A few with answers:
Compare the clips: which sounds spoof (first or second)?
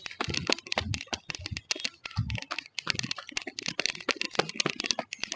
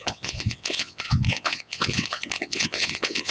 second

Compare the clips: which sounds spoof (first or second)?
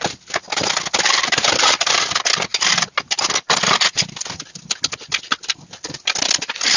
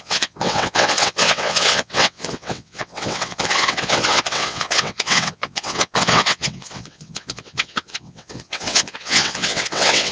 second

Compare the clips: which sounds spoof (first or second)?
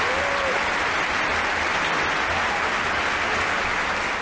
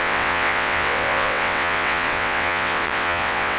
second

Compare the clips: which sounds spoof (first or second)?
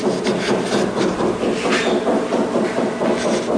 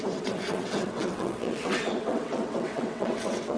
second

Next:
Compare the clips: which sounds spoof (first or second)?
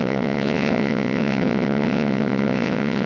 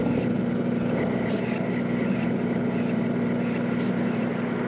first